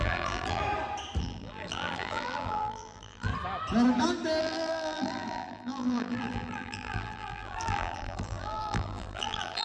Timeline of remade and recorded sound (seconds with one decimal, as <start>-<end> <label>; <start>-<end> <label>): 0.0-0.6 remade; 0.6-1.2 recorded; 1.2-3.3 remade; 3.3-4.4 recorded; 4.4-9.6 remade